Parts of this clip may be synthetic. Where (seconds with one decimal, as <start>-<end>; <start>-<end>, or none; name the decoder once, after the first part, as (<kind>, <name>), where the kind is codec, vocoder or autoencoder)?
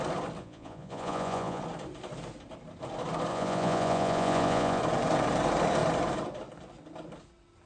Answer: 0.4-1.6 (vocoder, Vocos); 3.3-4.8